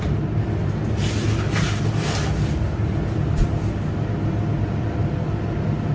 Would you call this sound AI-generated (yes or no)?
no